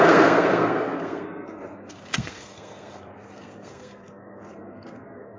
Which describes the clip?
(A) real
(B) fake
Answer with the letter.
B